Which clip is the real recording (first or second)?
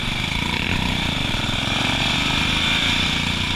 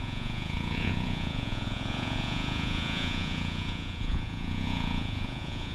first